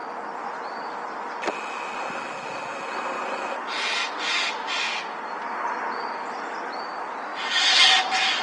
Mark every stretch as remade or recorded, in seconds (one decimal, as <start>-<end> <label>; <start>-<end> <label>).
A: 0.0-8.4 recorded